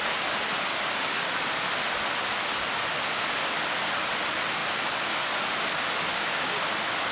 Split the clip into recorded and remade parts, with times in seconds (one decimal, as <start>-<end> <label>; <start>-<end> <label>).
0.0-0.7 recorded; 0.7-1.3 remade; 1.3-6.1 recorded; 6.1-6.6 remade; 6.6-7.1 recorded

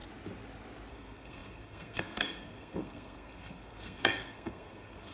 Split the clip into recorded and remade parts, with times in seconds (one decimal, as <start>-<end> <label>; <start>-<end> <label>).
0.0-0.9 recorded; 0.9-5.1 remade